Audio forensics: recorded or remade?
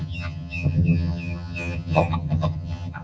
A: remade